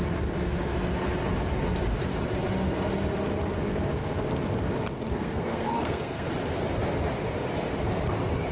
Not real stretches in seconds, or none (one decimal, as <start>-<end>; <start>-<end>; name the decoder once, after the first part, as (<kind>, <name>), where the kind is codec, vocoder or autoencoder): 5.1-6.3 (codec, SNAC)